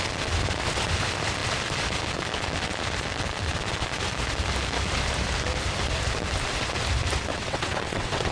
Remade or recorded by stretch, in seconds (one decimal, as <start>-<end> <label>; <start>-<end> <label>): 0.0-7.3 recorded; 7.3-8.3 remade